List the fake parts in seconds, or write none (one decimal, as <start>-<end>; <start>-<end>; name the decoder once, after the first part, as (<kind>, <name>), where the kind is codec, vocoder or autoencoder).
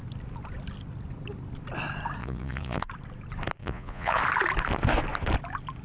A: 2.2-2.9 (vocoder, Vocos); 3.6-4.2